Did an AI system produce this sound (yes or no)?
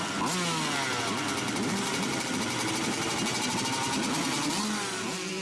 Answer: no